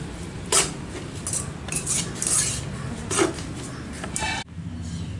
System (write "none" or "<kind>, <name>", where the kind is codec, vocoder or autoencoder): none